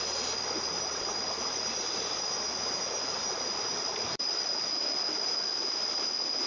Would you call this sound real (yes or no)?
yes